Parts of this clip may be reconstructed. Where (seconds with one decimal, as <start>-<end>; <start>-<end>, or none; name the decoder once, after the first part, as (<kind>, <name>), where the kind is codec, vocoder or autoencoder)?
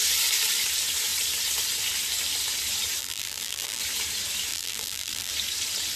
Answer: 3.0-3.8 (vocoder, BigVGAN v2); 4.5-5.3